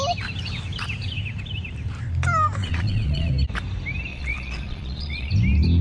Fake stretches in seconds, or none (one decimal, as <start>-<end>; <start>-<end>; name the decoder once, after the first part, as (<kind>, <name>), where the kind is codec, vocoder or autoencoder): 2.6-3.3 (vocoder, Vocos); 4.1-5.3